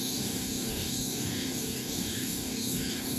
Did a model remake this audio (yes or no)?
yes